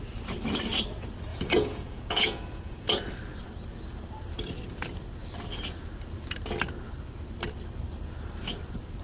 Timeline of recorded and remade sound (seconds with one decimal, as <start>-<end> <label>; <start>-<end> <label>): 0.0-1.3 recorded; 1.3-3.0 remade; 3.0-9.0 recorded